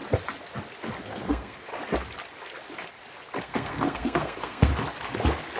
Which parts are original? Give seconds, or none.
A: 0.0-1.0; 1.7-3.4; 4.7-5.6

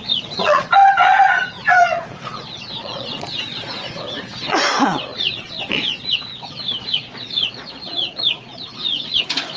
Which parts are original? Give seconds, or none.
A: none

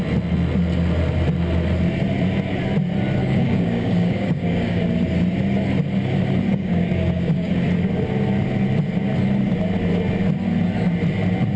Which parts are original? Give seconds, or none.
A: 0.0-3.2; 4.8-6.5; 7.5-11.6

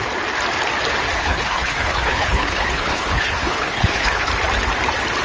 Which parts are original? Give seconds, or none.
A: 0.0-1.2; 4.3-5.2

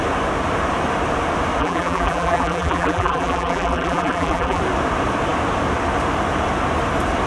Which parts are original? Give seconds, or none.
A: 0.0-1.6; 4.6-7.3

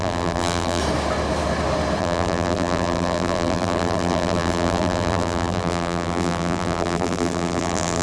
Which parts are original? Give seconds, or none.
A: 0.8-2.0

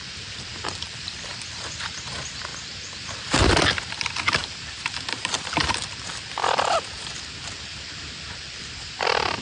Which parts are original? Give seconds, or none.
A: 2.5-3.0